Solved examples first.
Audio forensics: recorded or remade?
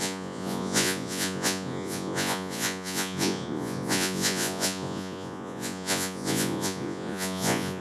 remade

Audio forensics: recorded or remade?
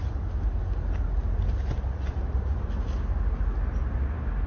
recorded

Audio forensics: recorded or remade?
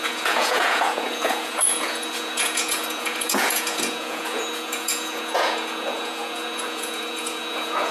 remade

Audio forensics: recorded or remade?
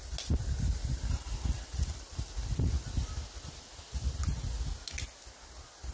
recorded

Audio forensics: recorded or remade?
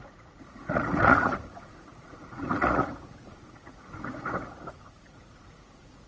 remade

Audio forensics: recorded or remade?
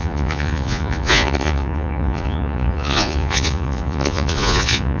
remade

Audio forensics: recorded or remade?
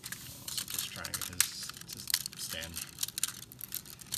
recorded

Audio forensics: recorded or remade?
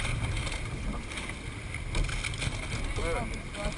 recorded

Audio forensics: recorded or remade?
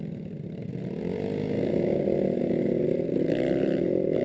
recorded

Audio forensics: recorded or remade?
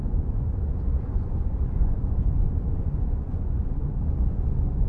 remade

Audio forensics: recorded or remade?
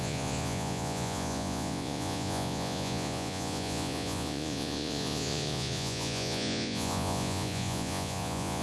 remade